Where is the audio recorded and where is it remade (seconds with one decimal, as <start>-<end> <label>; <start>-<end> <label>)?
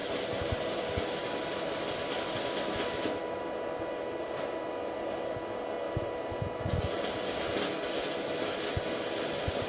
0.0-9.7 recorded